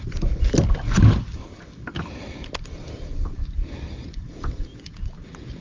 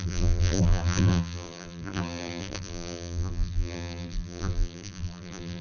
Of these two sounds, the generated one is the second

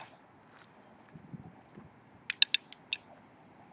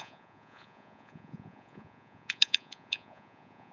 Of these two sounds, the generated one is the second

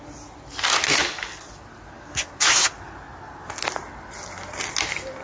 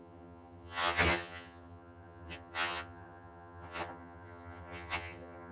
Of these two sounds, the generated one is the second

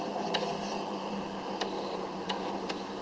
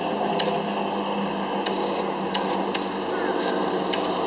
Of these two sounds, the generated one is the first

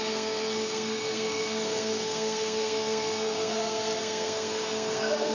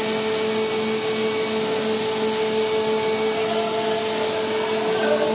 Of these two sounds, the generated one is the first